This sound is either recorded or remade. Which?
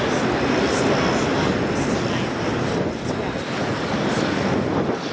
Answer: recorded